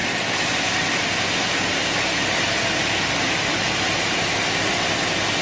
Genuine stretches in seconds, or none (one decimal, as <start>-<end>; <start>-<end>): 0.0-5.4